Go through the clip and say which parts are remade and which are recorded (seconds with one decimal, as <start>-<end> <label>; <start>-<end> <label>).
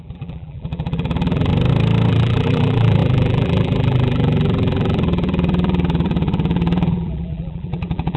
0.0-1.5 remade; 1.5-2.1 recorded; 2.1-8.2 remade